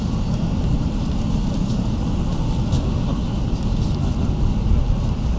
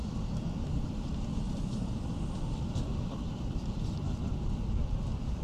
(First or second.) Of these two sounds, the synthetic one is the second